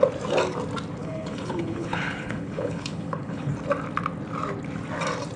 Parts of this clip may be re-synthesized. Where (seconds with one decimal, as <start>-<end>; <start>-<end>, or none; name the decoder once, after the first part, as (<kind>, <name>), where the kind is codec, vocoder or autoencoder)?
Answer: 1.0-3.5 (codec, HILCodec)